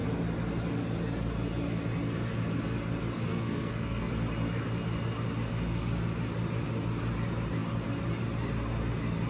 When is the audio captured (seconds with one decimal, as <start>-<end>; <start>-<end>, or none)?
0.0-3.3; 4.1-9.3